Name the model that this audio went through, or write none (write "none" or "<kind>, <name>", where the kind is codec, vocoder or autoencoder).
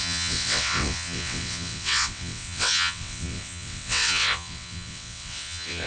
vocoder, WaveNeXt